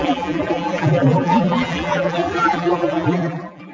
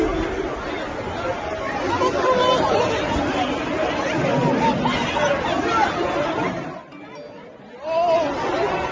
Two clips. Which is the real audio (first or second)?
second